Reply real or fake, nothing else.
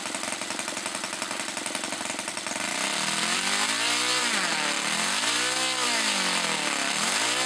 fake